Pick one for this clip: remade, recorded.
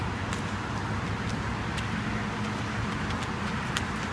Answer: recorded